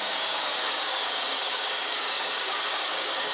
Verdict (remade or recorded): remade